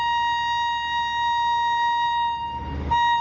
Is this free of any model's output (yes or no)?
yes